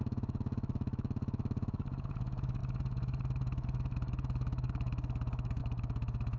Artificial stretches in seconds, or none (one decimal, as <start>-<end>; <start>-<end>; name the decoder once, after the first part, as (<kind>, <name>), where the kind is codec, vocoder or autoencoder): 0.0-6.4 (autoencoder, DAC-VAE)